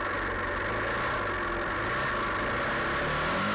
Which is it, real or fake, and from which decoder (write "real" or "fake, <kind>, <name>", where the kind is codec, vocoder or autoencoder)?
real